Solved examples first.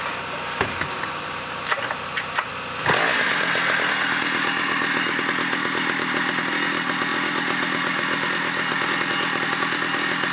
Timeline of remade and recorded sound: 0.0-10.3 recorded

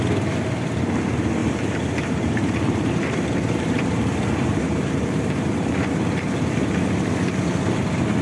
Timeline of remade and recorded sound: 0.0-1.4 recorded; 1.4-6.3 remade; 6.3-8.2 recorded

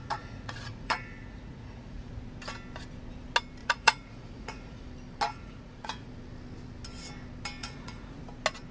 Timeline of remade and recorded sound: 0.0-2.1 remade; 2.1-3.6 recorded; 3.6-4.8 remade; 4.8-5.3 recorded; 5.3-6.1 remade; 6.1-7.6 recorded; 7.6-8.2 remade; 8.2-8.7 recorded